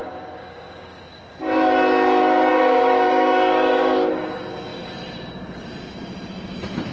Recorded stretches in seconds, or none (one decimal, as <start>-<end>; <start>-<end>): 1.2-2.5; 4.1-6.9